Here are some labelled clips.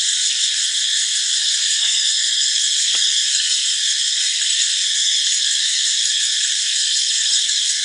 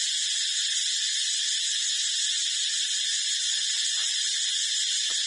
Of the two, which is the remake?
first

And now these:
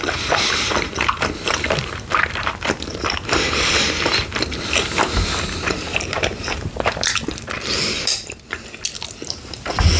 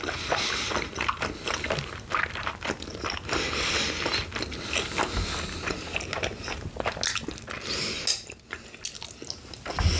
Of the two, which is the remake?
first